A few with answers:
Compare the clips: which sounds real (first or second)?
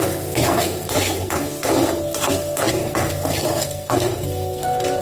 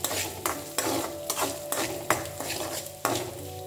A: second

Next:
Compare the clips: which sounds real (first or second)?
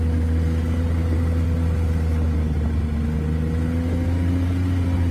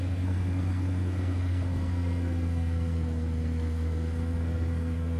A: first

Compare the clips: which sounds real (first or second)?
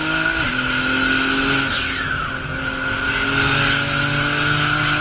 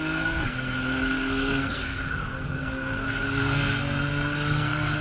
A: first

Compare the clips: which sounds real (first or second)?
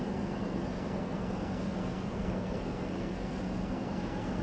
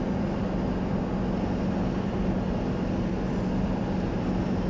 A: second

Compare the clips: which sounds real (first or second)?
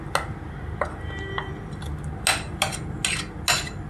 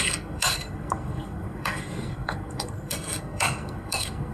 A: first